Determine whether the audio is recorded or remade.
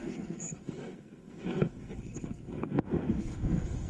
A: remade